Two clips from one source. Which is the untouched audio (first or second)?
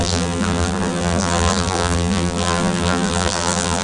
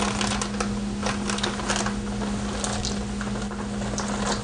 second